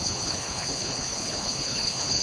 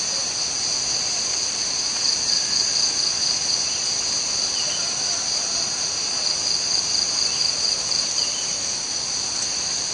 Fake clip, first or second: first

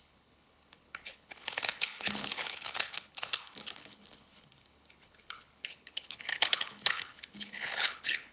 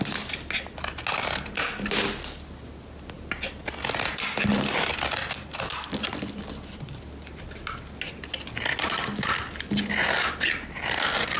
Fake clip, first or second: first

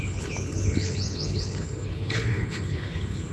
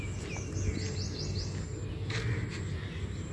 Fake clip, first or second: first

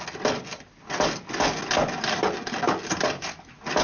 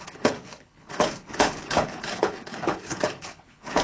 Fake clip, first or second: second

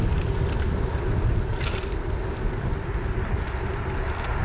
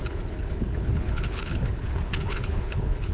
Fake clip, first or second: second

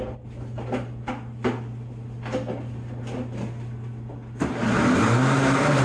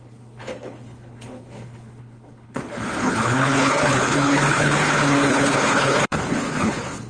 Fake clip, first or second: second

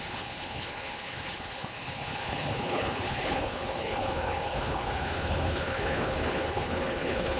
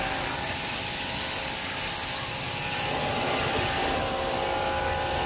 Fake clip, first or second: first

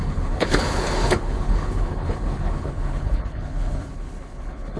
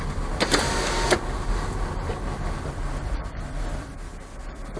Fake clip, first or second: first